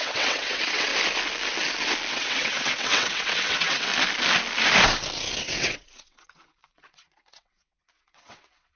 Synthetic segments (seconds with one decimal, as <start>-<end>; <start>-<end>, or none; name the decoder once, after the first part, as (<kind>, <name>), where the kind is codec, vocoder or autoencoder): 0.0-0.9 (vocoder, WaveNeXt); 2.1-3.9; 5.4-8.8